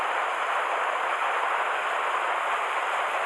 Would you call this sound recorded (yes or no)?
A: yes